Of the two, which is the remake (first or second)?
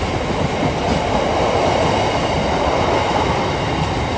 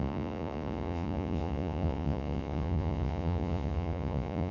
second